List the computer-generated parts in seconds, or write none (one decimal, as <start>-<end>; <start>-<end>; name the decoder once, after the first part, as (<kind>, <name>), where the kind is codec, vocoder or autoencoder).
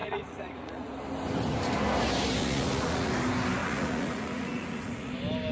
0.0-0.9 (vocoder, Vocos); 2.4-3.1; 3.6-5.1